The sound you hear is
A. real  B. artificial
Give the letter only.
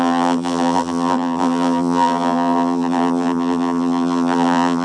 B